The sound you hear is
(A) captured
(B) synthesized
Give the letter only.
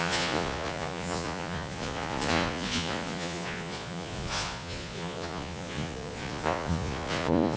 B